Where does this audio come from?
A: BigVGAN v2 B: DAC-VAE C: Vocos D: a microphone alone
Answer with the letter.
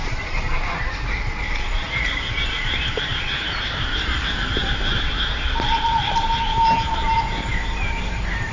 A